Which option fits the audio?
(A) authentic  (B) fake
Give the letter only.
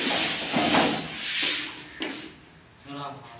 A